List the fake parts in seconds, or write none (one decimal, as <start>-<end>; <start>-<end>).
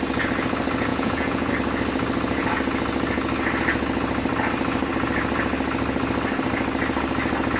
0.9-1.5